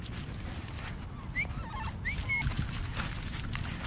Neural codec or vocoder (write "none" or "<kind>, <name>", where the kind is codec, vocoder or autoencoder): none